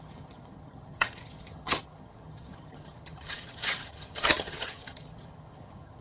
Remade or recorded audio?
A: remade